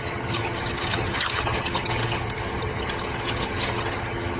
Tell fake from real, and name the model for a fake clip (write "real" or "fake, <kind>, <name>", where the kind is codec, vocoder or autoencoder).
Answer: fake, vocoder, HiFi-GAN